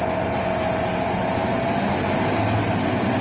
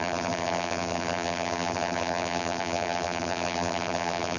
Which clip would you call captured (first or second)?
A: first